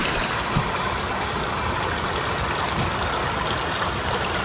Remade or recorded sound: recorded